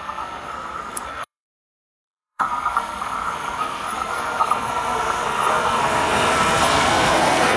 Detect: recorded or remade remade